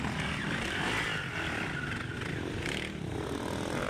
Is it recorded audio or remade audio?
recorded